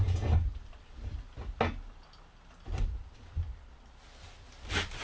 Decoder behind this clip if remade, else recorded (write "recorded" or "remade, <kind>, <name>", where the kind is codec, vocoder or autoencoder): recorded